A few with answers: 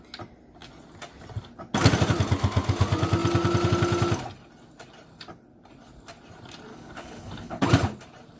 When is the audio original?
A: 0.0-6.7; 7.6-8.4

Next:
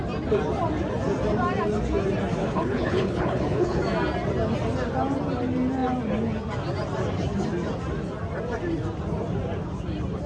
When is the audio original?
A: 0.0-2.4; 3.8-10.3

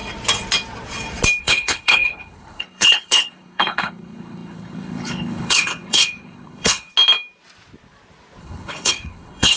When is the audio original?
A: 0.0-1.4; 6.9-8.4

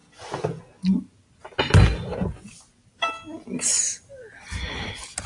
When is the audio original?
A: 0.0-5.3

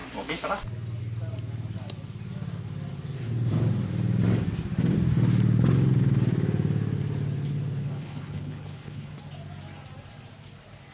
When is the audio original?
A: 0.0-7.8; 9.1-10.9

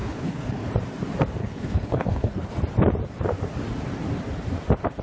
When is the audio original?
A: 0.7-1.4; 2.5-5.0